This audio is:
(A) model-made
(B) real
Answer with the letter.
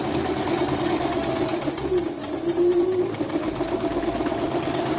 B